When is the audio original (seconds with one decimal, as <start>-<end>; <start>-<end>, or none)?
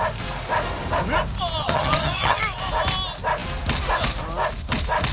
0.0-1.6; 2.4-5.1